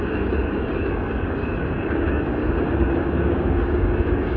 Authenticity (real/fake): fake